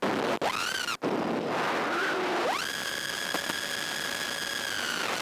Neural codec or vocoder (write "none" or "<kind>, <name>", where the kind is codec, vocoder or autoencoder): none